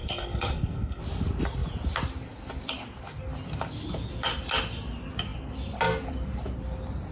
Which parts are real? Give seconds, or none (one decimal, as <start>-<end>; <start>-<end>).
1.0-7.1